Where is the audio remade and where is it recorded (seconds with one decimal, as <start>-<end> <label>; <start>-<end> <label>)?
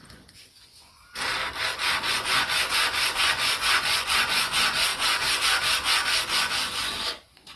0.0-1.0 remade; 1.0-2.0 recorded; 2.0-7.6 remade